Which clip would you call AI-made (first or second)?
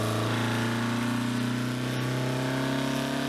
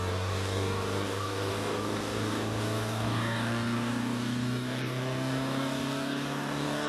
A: second